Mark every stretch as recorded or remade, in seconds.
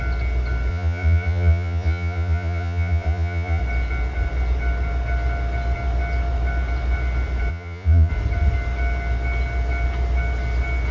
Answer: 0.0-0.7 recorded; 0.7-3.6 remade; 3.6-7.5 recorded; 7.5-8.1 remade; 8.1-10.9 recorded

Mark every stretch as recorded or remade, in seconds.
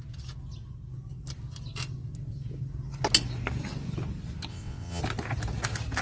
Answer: 0.0-4.5 recorded; 4.5-5.0 remade; 5.0-6.0 recorded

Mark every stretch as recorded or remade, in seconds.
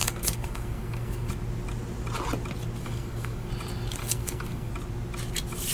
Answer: 0.0-1.3 remade; 1.3-2.8 recorded; 2.8-3.5 remade; 3.5-4.0 recorded; 4.0-4.7 remade; 4.7-5.7 recorded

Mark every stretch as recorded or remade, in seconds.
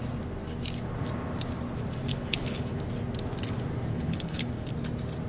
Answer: 0.0-2.1 recorded; 2.1-2.8 remade; 2.8-3.9 recorded; 3.9-4.5 remade; 4.5-5.3 recorded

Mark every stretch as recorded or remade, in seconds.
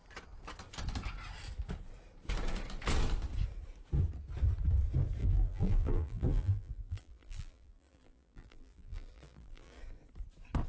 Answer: 0.0-5.2 recorded; 5.2-9.8 remade; 9.8-10.7 recorded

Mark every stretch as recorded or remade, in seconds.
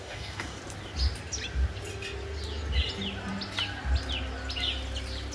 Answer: 0.0-0.6 remade; 0.6-5.3 recorded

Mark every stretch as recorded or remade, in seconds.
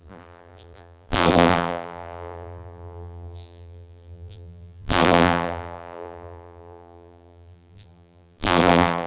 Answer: 0.0-9.1 remade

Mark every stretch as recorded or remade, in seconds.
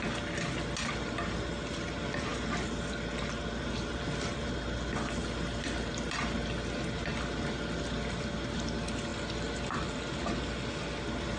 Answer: 0.0-11.4 recorded